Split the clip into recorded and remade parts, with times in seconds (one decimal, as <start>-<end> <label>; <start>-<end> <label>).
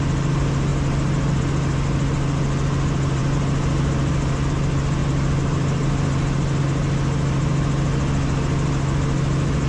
0.0-9.7 recorded